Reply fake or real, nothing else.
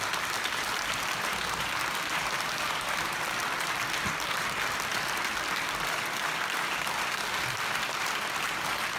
fake